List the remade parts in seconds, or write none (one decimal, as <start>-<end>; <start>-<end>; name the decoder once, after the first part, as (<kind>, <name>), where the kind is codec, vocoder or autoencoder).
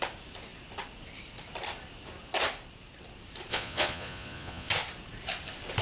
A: 3.5-4.7 (vocoder, Vocos)